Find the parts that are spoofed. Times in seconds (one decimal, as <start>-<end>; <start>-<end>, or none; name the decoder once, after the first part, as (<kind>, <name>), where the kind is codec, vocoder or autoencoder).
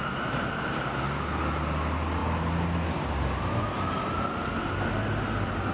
none